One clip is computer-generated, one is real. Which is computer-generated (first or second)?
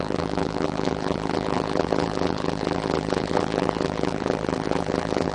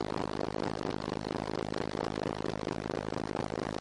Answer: first